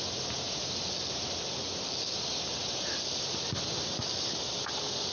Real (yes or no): yes